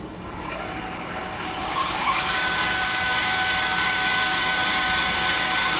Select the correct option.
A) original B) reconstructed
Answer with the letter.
B